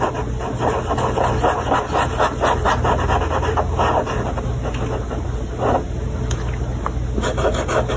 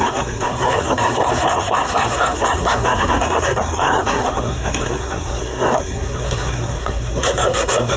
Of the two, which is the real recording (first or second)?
first